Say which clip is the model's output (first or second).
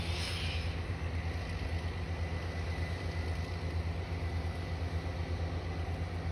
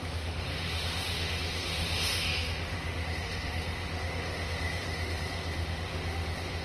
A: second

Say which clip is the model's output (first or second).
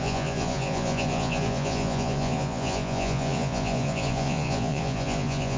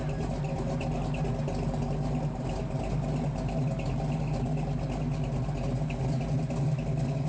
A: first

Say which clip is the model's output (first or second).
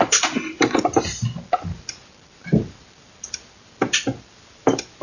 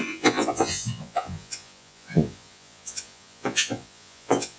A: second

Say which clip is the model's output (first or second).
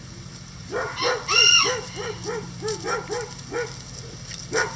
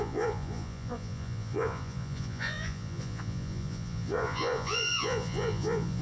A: second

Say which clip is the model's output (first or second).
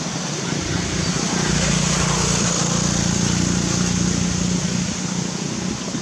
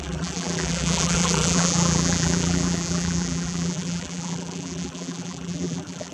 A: second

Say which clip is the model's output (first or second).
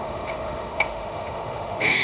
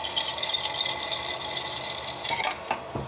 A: first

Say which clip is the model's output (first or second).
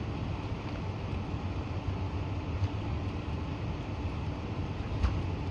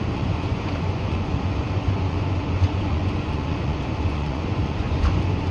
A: second